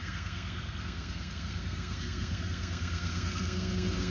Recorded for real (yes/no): no